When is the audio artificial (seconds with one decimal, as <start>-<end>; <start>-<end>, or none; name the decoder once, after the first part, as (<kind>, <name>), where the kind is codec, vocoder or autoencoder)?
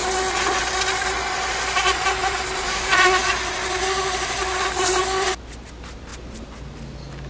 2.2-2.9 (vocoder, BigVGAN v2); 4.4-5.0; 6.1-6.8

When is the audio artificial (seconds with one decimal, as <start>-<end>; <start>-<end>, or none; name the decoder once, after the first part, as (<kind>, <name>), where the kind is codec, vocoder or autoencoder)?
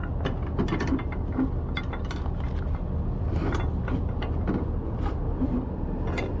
4.8-6.4 (vocoder, BigVGAN v2)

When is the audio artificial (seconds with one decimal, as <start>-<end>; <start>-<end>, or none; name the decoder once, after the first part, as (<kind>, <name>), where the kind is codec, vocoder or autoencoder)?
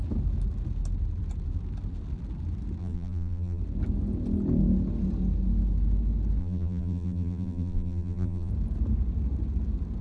2.8-3.6 (vocoder, BigVGAN v2); 6.4-8.5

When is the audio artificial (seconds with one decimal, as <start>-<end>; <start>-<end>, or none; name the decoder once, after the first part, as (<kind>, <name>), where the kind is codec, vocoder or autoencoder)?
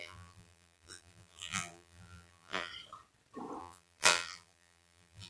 0.0-2.7 (vocoder, BigVGAN v2); 3.6-5.3